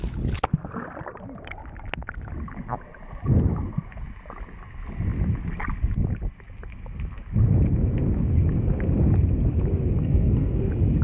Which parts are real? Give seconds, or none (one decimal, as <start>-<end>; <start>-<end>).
0.0-10.0; 10.6-11.0